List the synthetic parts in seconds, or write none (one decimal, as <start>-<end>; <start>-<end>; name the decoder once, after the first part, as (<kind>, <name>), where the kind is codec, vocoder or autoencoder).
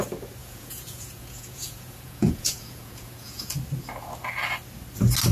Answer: 0.4-3.5 (vocoder, Vocos)